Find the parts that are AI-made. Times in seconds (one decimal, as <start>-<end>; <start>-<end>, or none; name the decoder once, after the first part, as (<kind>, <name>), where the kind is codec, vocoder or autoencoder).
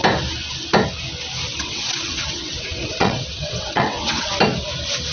1.5-4.3 (vocoder, WaveNeXt)